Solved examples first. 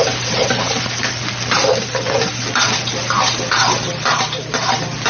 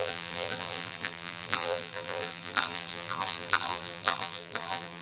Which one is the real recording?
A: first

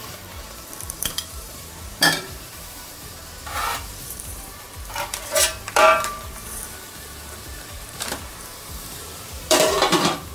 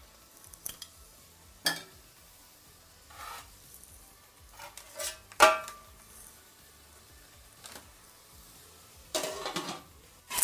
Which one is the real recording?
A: second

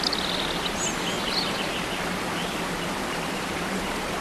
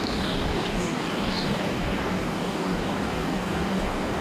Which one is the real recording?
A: first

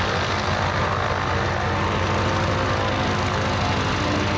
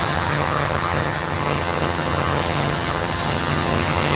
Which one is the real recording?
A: first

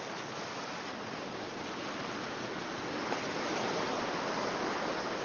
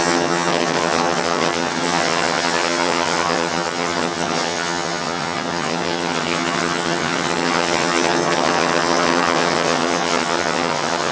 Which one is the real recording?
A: first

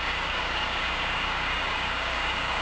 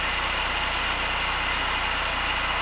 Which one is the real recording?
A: second